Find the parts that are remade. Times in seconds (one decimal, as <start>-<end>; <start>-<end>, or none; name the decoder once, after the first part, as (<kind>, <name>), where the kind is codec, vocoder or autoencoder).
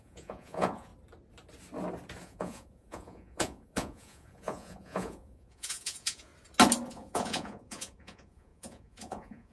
0.0-0.9 (vocoder, Vocos); 2.2-6.3; 6.9-9.5